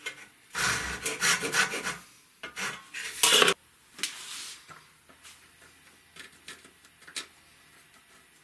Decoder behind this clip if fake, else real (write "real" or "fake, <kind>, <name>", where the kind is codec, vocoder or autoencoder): real